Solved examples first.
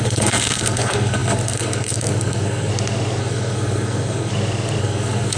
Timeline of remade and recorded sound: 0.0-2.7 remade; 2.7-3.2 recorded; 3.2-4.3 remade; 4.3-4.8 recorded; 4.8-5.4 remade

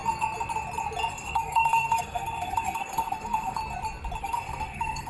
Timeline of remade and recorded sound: 0.0-1.1 recorded; 1.1-3.6 remade; 3.6-4.2 recorded; 4.2-5.1 remade

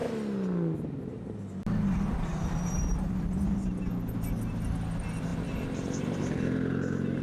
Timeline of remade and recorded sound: 0.0-5.3 recorded; 5.3-6.2 remade; 6.2-7.2 recorded